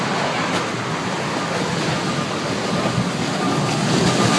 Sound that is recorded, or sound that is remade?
recorded